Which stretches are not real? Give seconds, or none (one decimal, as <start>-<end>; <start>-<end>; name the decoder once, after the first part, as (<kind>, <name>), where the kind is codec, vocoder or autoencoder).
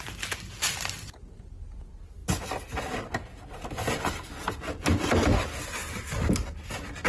none